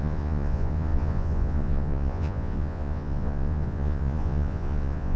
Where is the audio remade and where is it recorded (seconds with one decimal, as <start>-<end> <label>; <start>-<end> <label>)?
0.0-5.2 remade